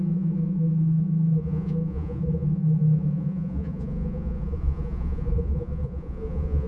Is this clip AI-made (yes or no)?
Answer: yes